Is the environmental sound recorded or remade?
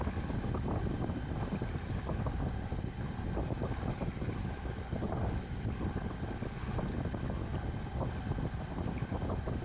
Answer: recorded